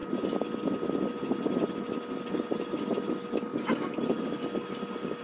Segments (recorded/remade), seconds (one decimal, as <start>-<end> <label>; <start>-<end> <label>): 0.0-3.5 recorded; 3.5-4.2 remade; 4.2-5.2 recorded